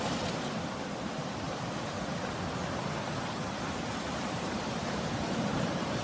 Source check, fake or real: fake